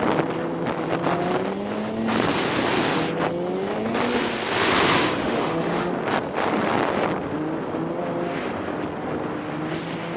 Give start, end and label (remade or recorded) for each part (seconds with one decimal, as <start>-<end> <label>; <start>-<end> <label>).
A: 0.0-5.2 recorded; 5.2-5.9 remade; 5.9-10.2 recorded